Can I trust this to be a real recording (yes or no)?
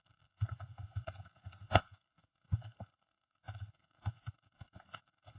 no